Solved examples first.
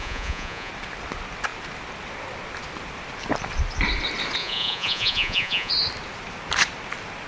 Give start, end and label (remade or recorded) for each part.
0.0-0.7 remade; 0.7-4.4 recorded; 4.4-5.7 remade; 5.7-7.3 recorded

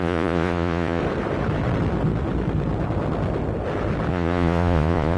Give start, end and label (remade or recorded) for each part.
0.0-1.0 remade; 1.0-4.1 recorded; 4.1-5.2 remade

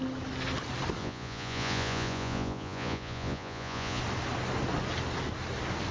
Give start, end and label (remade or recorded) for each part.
0.0-1.0 recorded; 1.0-4.0 remade; 4.0-5.9 recorded

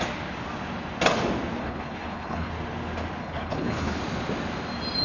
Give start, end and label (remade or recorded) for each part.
0.0-1.6 recorded; 1.6-2.5 remade; 2.5-3.2 recorded; 3.2-4.0 remade; 4.0-5.0 recorded